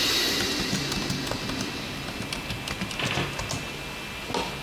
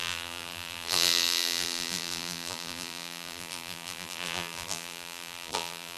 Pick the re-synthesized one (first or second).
second